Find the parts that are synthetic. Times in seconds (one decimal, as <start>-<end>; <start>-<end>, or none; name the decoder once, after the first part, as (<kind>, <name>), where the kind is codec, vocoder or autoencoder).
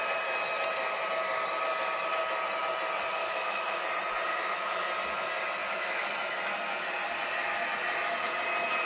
3.2-3.8 (autoencoder, DAC-VAE); 4.3-4.9; 5.6-6.1